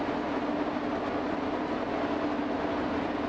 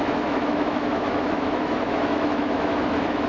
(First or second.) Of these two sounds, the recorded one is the first